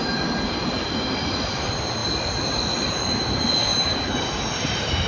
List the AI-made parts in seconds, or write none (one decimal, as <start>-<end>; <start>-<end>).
0.0-2.0; 2.9-5.1